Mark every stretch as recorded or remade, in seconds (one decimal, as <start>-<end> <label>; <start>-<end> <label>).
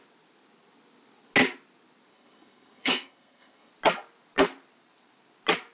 0.0-2.1 recorded; 2.1-3.7 remade; 3.7-5.7 recorded